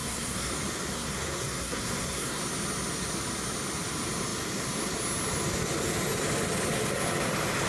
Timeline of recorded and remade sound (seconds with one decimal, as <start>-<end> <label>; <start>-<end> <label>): 0.0-0.5 remade; 0.5-0.9 recorded; 0.9-2.4 remade; 2.4-7.7 recorded